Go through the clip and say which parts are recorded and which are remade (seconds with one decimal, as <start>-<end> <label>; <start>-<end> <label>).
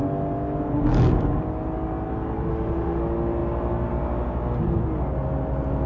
0.0-2.5 recorded; 2.5-3.0 remade; 3.0-5.9 recorded